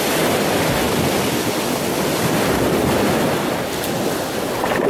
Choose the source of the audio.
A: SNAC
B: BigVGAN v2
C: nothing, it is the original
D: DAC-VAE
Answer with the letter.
C